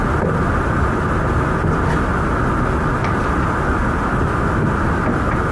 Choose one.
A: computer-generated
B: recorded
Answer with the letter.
B